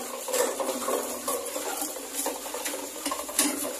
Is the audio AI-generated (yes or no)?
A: no